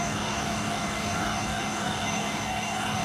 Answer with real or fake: fake